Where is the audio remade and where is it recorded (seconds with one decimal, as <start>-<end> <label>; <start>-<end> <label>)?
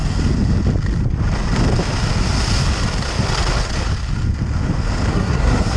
0.0-5.1 recorded; 5.1-5.8 remade